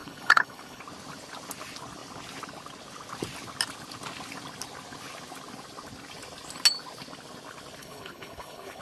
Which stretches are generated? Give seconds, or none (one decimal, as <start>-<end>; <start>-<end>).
0.0-0.8; 7.8-8.8